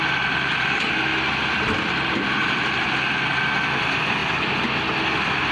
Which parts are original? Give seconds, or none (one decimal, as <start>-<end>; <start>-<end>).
0.0-5.5